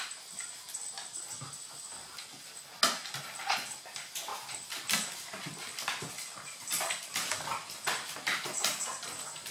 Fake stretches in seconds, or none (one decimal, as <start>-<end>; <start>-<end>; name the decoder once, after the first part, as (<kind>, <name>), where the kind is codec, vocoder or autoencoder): none